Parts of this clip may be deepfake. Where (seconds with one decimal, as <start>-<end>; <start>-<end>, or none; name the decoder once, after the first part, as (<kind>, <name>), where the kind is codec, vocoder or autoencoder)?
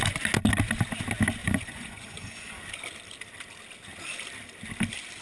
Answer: 1.4-2.6 (vocoder, Vocos)